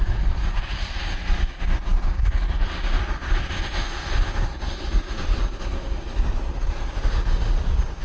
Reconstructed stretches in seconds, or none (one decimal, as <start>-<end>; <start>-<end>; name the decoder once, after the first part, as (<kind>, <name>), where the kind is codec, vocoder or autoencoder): 6.4-6.9 (vocoder, Vocos)